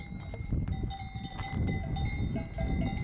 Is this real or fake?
real